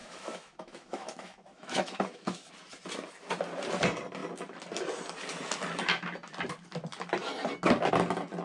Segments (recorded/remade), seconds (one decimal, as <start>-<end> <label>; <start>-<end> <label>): 0.0-2.5 remade; 2.5-8.4 recorded